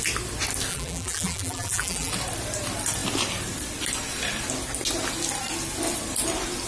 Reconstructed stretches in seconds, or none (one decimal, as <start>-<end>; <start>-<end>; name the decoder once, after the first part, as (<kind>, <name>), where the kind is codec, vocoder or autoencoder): 0.7-2.1 (vocoder, BigVGAN v2)